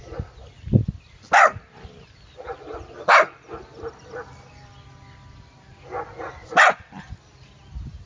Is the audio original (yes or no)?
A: yes